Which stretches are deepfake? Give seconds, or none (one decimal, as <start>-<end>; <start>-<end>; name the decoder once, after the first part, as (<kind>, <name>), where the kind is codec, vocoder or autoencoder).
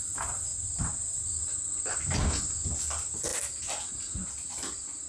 none